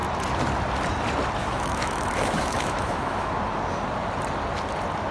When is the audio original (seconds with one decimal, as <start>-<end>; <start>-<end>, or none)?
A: 0.0-1.4; 3.3-5.1